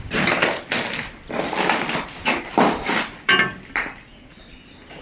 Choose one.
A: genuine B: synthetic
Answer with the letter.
B